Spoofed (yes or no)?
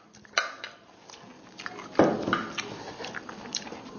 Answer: no